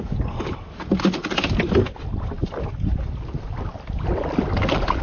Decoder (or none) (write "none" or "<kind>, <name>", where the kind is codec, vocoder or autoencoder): none